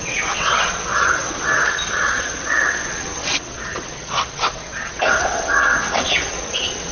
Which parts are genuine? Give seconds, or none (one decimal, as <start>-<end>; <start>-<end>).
none